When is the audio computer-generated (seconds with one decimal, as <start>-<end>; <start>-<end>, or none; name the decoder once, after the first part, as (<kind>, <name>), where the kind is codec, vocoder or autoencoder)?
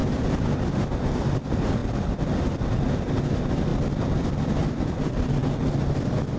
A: 0.0-0.5 (vocoder, BigVGAN v2); 1.8-2.4